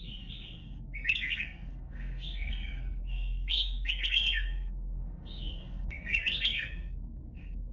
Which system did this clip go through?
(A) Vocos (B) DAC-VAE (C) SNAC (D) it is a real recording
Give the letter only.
C